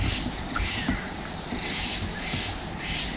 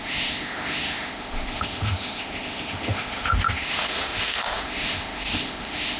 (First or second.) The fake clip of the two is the second